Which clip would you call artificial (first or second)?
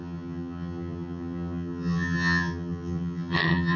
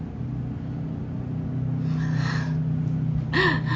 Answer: first